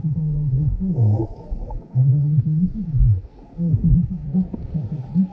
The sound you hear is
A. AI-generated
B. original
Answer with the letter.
A